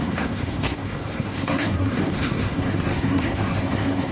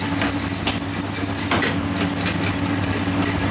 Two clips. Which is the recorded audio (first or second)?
second